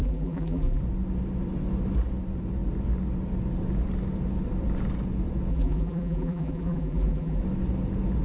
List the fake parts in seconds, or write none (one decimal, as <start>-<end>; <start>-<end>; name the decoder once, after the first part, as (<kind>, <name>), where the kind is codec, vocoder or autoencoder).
0.0-0.8 (vocoder, BigVGAN v2); 5.5-7.4